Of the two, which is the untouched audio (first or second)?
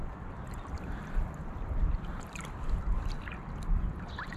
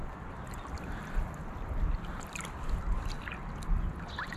second